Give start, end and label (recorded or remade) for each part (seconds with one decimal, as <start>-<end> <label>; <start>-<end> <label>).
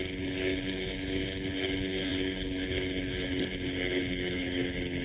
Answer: 0.0-5.0 remade